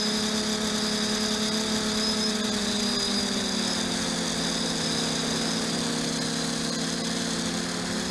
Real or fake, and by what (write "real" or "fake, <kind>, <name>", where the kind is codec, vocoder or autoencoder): real